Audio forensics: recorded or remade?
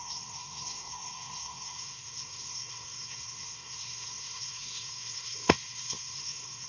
remade